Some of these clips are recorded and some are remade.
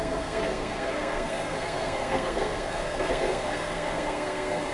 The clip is remade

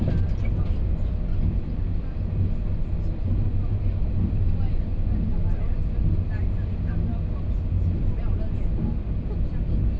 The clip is recorded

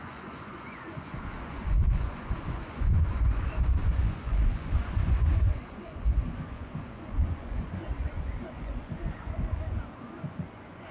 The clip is remade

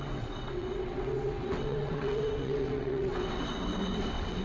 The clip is remade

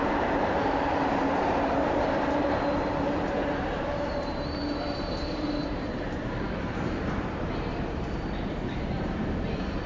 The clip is remade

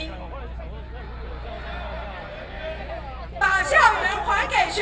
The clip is recorded